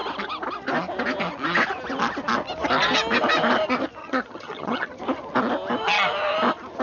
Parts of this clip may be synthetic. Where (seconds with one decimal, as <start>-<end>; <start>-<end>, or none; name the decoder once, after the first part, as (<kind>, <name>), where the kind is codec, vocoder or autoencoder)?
4.0-4.9 (vocoder, HiFi-GAN)